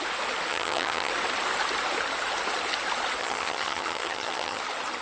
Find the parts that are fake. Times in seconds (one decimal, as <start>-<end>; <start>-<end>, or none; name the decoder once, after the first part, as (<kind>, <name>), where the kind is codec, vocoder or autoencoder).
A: 0.5-1.1 (vocoder, HiFi-GAN); 3.2-4.6